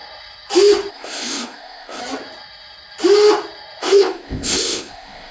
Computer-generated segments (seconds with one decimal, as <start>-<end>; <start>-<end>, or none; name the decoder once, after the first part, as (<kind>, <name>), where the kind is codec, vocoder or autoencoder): 0.9-2.0 (codec, ZipCodec); 3.8-5.3